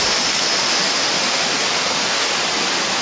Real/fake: real